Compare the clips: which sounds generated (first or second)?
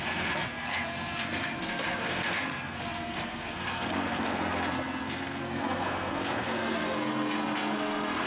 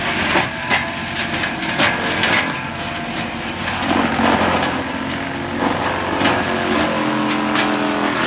first